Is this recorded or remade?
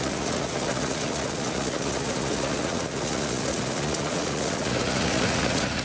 remade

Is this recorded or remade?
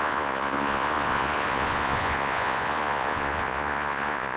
remade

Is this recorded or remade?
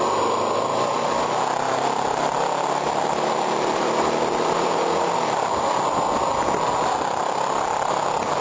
recorded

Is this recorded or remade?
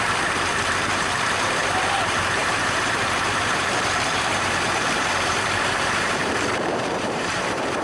remade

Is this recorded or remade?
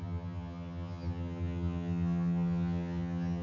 remade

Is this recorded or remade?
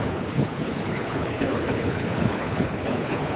remade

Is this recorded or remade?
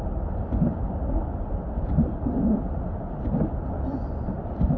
recorded